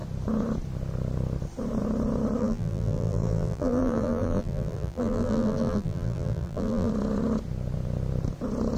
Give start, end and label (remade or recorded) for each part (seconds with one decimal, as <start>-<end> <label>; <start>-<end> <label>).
0.0-2.4 recorded; 2.4-6.9 remade; 6.9-8.8 recorded